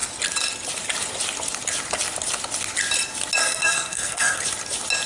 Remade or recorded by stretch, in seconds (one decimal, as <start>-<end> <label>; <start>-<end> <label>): 0.0-3.4 recorded; 3.4-4.4 remade; 4.4-5.1 recorded